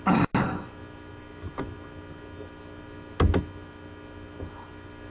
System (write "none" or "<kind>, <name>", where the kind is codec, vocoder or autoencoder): none